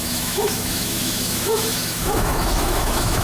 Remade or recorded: remade